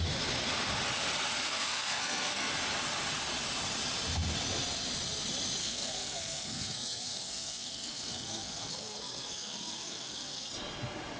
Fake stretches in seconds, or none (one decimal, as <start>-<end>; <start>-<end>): 1.5-2.5; 5.6-10.5